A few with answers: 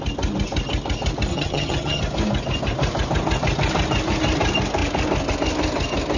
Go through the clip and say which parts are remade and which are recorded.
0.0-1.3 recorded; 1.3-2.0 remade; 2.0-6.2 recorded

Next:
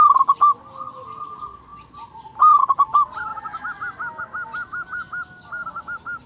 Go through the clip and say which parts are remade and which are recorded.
0.0-6.3 recorded

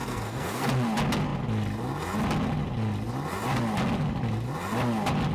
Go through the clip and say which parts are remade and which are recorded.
0.0-0.7 remade; 0.7-5.3 recorded

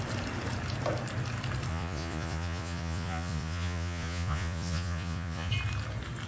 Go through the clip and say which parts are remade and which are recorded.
0.0-1.7 recorded; 1.7-5.5 remade; 5.5-6.3 recorded

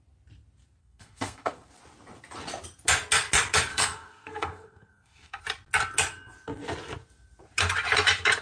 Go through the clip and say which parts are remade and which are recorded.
0.0-0.8 recorded; 0.8-1.7 remade; 1.7-3.7 recorded; 3.7-5.4 remade; 5.4-8.4 recorded

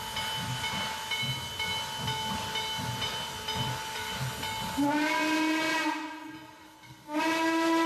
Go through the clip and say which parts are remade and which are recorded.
0.0-6.6 recorded; 6.6-7.2 remade; 7.2-7.9 recorded